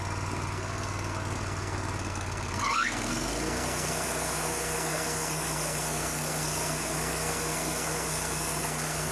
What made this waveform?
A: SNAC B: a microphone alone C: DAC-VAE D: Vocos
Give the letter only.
A